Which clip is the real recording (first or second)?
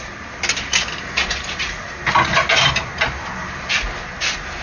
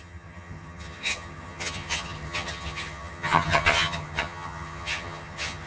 first